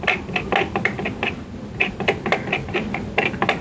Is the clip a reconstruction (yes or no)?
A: no